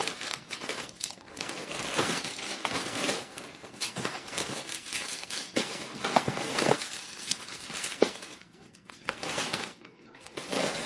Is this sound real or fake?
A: fake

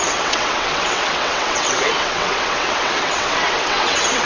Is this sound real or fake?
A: fake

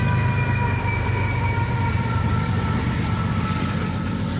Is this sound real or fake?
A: real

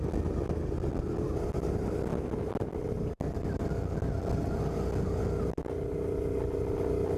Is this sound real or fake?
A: real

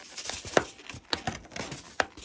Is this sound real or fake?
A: real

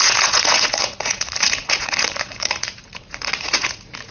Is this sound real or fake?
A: fake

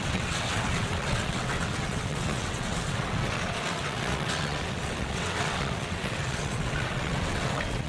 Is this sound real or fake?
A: fake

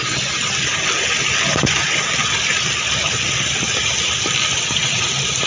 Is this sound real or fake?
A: fake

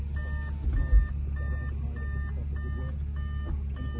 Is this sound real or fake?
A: real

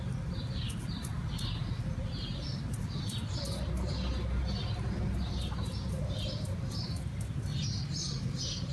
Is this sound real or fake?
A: real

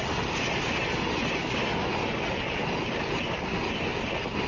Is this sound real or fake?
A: real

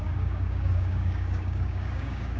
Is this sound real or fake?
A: fake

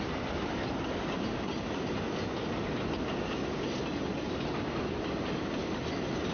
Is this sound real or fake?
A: real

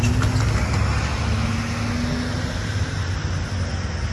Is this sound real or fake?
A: real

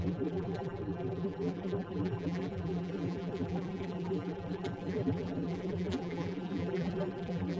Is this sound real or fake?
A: fake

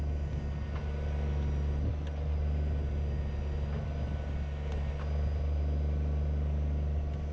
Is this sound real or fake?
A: real